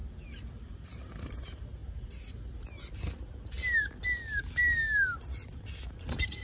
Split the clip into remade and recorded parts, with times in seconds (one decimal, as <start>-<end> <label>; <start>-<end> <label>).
0.0-0.5 recorded; 0.5-1.8 remade; 1.8-5.6 recorded; 5.6-6.4 remade